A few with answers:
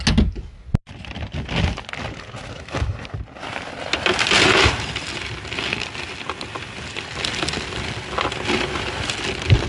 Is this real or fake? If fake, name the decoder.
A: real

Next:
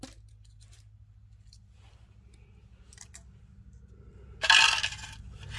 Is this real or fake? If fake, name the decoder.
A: real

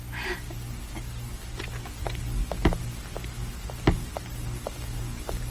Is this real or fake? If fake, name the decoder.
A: real